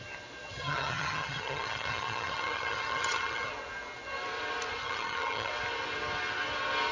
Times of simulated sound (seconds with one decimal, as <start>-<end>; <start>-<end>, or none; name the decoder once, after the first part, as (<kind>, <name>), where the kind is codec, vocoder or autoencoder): 0.5-3.5 (vocoder, HiFi-GAN); 4.8-5.5